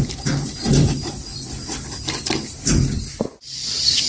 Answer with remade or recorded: remade